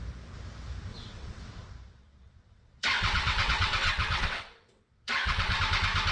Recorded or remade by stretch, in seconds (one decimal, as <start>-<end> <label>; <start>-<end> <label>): 0.0-0.9 recorded; 0.9-1.5 remade; 1.5-1.9 recorded; 1.9-5.6 remade; 5.6-6.1 recorded